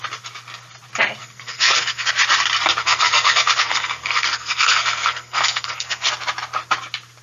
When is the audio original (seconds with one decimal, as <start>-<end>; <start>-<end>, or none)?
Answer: 0.0-1.2; 2.1-2.8; 6.1-7.2